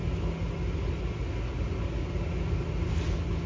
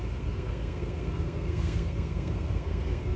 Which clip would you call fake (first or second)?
second